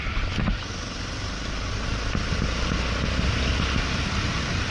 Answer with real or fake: real